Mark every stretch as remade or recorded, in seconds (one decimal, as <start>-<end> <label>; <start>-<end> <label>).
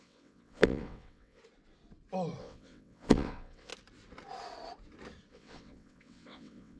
0.0-1.4 remade; 1.4-2.4 recorded; 2.4-3.7 remade; 3.7-5.3 recorded; 5.3-6.8 remade